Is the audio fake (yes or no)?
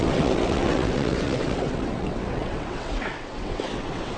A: yes